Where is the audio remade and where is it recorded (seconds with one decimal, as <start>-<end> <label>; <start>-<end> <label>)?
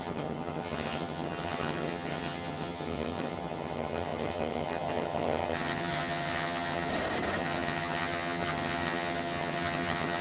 0.0-6.9 remade; 6.9-7.4 recorded; 7.4-10.2 remade